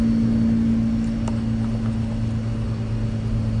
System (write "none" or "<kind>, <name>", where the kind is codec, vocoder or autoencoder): none